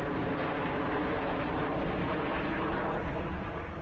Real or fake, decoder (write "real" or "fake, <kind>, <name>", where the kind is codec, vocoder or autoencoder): real